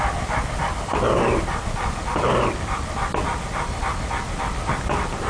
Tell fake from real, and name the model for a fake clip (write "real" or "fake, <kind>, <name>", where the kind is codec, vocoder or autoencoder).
real